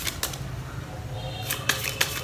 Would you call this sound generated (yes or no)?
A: no